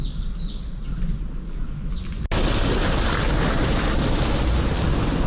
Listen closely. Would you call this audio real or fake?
real